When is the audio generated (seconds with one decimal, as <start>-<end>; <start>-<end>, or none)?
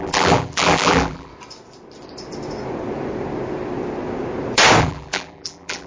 0.0-1.3; 4.8-5.9